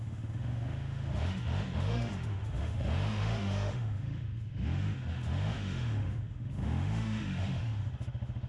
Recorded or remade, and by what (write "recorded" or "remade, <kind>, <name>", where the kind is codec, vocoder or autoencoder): remade, autoencoder, DAC-VAE